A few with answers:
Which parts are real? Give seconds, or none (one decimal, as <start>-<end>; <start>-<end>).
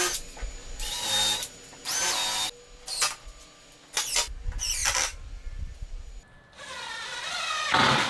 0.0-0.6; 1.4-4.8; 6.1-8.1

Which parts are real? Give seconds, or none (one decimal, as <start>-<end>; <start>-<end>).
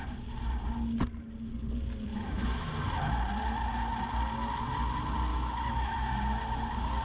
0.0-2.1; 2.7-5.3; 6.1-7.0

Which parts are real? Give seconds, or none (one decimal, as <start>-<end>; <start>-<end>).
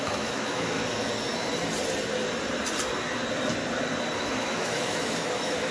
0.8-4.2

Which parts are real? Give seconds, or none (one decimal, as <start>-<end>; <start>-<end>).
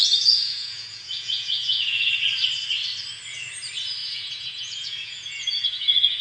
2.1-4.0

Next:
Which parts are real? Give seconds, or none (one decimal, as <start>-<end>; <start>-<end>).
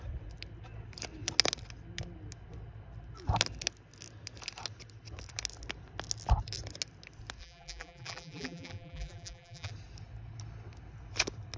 0.0-7.4; 9.7-11.6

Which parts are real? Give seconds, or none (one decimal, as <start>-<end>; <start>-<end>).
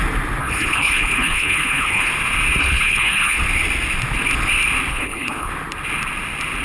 0.0-0.4; 2.1-2.6; 3.4-4.9; 5.5-6.6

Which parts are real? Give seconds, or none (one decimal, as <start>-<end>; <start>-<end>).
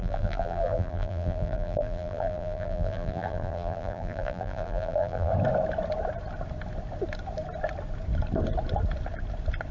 5.3-9.7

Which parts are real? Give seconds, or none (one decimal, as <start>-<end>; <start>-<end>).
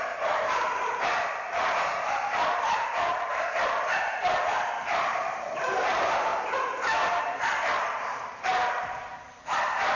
none